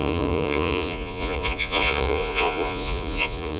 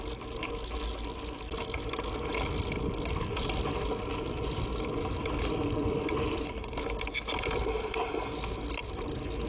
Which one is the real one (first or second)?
second